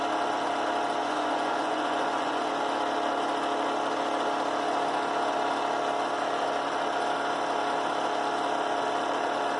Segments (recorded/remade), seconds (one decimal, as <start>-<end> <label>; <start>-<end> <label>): 0.0-1.0 recorded; 1.0-2.5 remade; 2.5-9.6 recorded